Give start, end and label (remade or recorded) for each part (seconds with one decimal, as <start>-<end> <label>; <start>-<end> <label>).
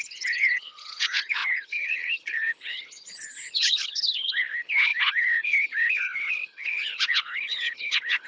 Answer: 0.0-8.3 remade